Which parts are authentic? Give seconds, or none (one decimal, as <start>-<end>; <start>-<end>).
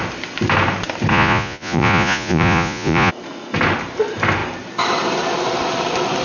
0.0-1.1; 3.1-6.2